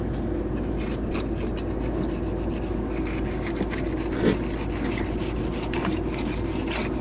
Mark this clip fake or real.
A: real